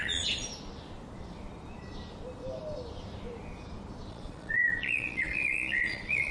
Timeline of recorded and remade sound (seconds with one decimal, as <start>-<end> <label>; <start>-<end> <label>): 0.0-0.5 remade; 0.5-4.1 recorded; 4.1-6.3 remade